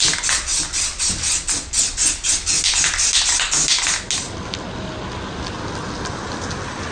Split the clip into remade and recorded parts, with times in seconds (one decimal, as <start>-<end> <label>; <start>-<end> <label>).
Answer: 0.0-6.9 recorded